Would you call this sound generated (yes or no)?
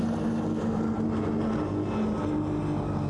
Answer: no